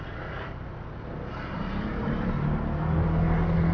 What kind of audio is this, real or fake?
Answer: real